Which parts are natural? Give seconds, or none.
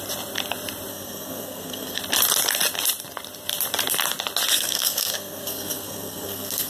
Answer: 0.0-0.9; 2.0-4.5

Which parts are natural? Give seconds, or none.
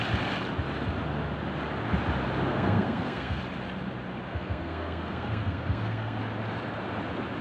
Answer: 0.0-2.5; 3.4-4.3; 6.2-7.4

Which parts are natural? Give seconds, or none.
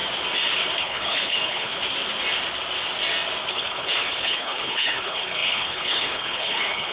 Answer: 0.0-0.8; 1.7-3.5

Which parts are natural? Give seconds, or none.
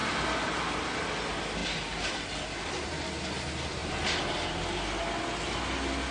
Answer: 0.0-6.1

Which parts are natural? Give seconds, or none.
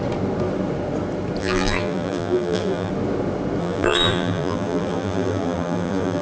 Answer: 0.0-1.4; 2.9-3.6